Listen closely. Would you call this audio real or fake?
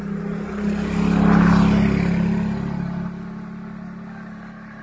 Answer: real